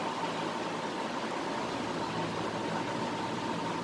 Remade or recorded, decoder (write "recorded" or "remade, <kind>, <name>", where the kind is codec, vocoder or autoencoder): recorded